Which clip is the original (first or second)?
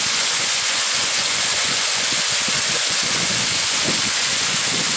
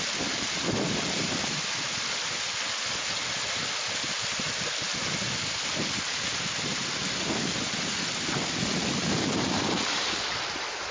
second